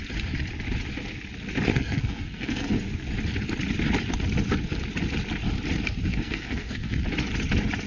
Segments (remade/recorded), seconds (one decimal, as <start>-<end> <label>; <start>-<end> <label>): 0.0-1.7 recorded; 1.7-2.8 remade; 2.8-6.1 recorded; 6.1-7.0 remade; 7.0-7.9 recorded